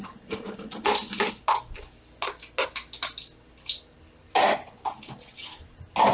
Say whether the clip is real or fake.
real